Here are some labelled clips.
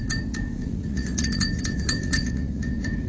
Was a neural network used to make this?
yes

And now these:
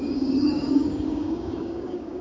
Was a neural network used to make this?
yes